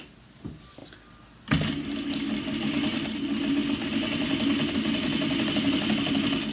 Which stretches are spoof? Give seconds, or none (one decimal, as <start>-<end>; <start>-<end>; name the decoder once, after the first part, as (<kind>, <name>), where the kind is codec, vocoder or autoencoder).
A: none